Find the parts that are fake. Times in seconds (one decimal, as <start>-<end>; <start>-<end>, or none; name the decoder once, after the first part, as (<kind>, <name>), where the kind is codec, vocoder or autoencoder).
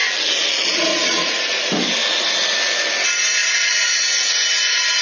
0.7-1.4 (vocoder, Vocos); 3.4-4.3